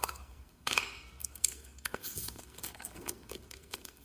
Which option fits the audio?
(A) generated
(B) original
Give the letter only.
A